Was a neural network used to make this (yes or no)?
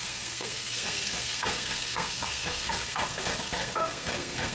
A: yes